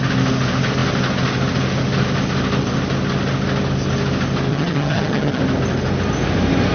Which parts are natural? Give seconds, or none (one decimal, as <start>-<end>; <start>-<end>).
0.0-4.5; 5.4-6.7